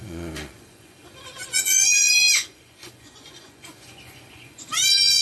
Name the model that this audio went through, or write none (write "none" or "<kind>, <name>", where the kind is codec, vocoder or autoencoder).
vocoder, Vocos